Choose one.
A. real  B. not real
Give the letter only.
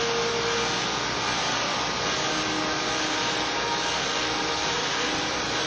A